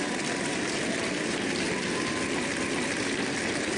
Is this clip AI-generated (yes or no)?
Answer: no